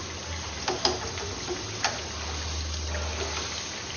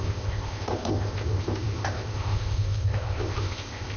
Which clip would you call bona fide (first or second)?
first